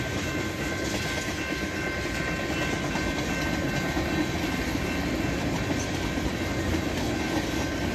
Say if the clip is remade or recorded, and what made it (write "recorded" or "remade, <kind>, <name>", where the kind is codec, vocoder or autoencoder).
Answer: recorded